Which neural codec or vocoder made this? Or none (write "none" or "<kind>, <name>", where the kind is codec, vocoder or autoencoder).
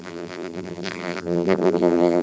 vocoder, BigVGAN v2